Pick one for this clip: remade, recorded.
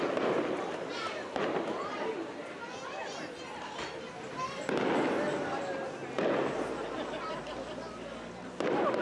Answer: recorded